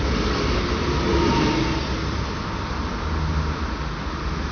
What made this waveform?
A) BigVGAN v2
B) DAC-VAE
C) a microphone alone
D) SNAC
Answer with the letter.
C